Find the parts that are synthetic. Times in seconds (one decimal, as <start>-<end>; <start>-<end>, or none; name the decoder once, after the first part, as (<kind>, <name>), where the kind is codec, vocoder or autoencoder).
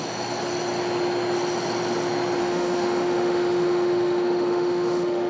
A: 2.4-5.3 (autoencoder, DAC-VAE)